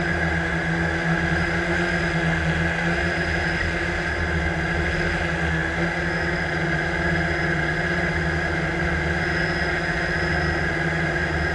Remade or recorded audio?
recorded